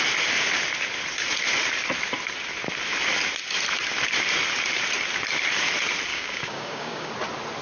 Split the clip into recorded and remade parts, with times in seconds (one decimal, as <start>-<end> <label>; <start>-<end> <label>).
0.0-6.1 recorded; 6.1-7.1 remade; 7.1-7.6 recorded